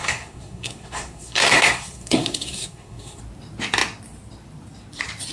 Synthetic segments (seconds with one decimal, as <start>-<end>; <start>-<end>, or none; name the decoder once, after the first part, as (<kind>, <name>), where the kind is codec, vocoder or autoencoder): 0.0-3.2 (codec, SNAC)